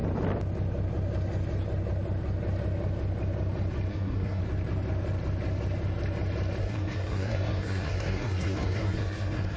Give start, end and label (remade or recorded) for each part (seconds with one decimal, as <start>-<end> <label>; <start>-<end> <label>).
0.0-3.9 recorded; 3.9-4.4 remade; 4.4-6.6 recorded; 6.6-9.6 remade